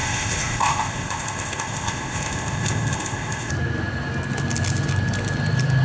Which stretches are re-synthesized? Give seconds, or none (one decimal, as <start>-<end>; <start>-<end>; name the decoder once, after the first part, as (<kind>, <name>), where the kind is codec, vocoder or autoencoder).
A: 0.0-3.5 (codec, ZipCodec)